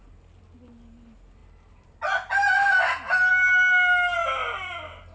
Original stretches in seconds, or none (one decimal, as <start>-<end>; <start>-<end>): 0.0-5.1